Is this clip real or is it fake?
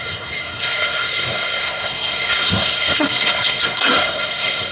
fake